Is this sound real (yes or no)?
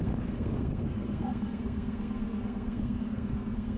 no